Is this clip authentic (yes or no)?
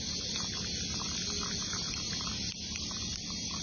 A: yes